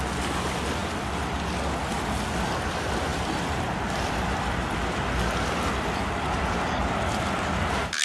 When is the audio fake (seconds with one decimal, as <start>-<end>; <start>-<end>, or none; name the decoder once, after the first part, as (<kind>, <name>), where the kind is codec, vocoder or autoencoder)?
3.1-5.3 (vocoder, BigVGAN v2)